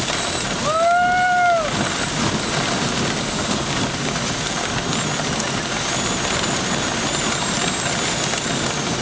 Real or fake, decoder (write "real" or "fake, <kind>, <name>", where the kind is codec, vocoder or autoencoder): real